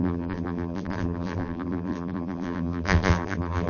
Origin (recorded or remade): remade